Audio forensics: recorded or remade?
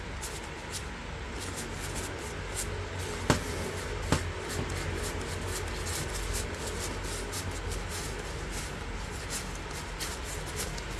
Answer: recorded